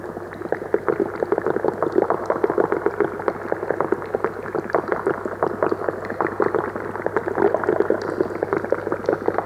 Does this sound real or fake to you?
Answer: real